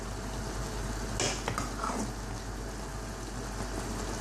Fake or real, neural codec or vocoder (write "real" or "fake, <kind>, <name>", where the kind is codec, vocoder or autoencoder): real